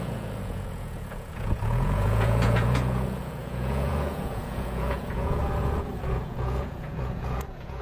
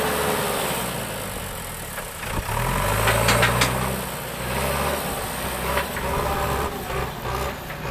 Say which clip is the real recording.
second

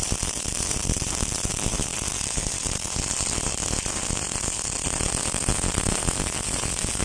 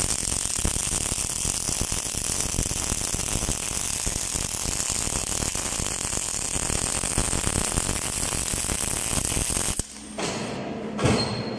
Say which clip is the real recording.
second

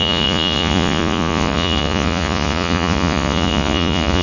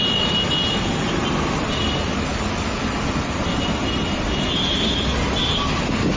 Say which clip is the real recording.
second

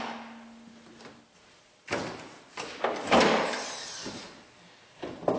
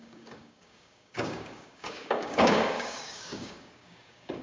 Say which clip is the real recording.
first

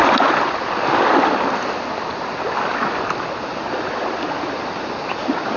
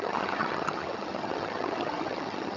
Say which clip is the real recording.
first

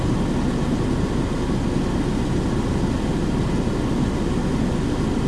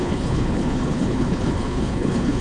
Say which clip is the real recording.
first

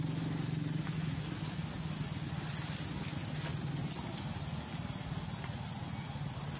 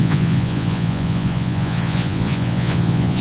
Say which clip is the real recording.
first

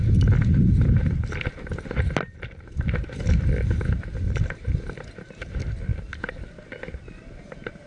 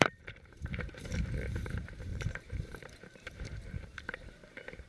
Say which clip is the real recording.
first